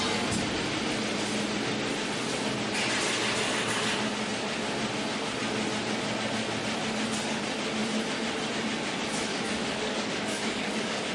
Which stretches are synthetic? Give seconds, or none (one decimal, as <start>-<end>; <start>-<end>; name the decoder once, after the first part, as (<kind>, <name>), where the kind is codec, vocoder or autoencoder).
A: 9.3-11.1 (codec, DAC)